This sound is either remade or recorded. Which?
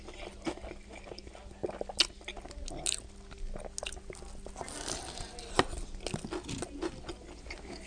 recorded